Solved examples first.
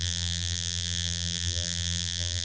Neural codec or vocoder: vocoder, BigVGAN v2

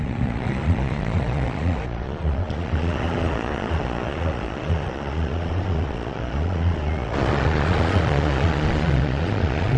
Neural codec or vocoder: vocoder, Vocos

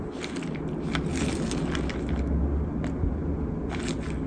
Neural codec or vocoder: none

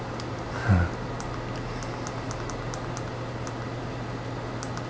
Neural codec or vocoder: none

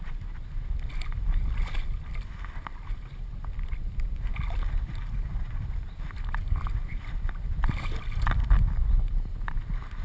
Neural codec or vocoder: none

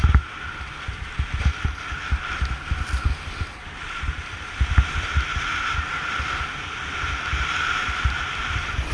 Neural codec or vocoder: none